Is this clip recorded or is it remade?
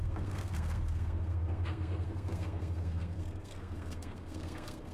remade